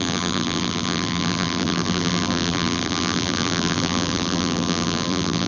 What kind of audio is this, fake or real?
fake